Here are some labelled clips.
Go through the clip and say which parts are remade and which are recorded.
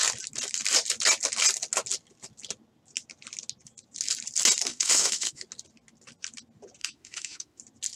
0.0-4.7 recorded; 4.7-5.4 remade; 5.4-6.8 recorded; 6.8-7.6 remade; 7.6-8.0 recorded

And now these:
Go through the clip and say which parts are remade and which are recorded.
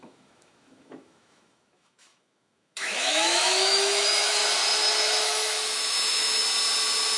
0.0-4.4 remade; 4.4-5.0 recorded; 5.0-6.4 remade; 6.4-7.2 recorded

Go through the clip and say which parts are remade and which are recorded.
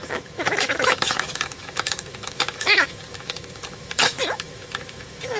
0.0-5.4 remade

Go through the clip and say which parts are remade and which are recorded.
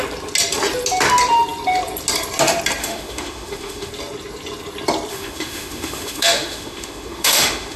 0.0-2.8 recorded; 2.8-3.9 remade; 3.9-5.1 recorded; 5.1-7.8 remade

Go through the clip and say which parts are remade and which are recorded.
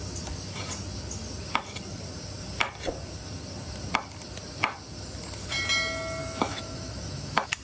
0.0-6.2 recorded; 6.2-7.6 remade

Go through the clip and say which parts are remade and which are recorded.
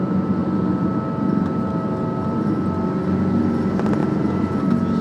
0.0-5.0 recorded